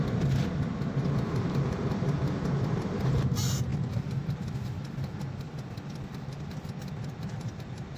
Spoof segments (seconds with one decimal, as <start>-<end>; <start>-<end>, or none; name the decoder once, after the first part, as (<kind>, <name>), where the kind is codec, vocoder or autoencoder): 0.0-0.4 (vocoder, BigVGAN v2); 1.3-3.7; 7.0-8.0